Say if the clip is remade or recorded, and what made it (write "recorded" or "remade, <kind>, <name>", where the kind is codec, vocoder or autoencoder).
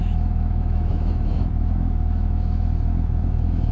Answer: remade, autoencoder, DAC-VAE